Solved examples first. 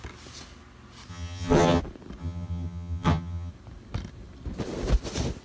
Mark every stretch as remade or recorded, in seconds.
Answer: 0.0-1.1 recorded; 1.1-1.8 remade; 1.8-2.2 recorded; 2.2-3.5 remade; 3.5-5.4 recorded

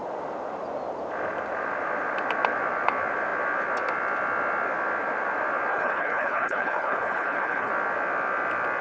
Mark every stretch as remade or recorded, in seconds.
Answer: 0.0-5.7 recorded; 5.7-7.7 remade; 7.7-8.8 recorded

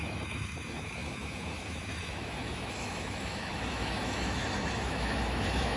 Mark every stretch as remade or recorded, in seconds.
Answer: 0.0-5.8 remade

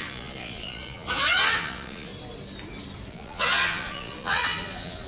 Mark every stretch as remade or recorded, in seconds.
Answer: 0.0-2.1 remade; 2.1-3.1 recorded; 3.1-5.1 remade

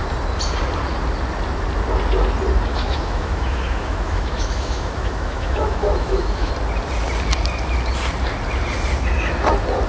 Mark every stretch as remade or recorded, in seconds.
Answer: 0.0-2.7 recorded; 2.7-6.5 remade; 6.5-9.9 recorded